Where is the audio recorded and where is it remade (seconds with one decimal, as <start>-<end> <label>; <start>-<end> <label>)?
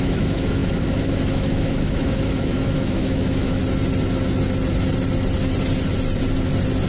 0.0-3.6 remade; 3.6-6.9 recorded